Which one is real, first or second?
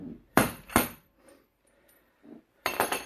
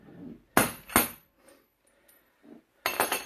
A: second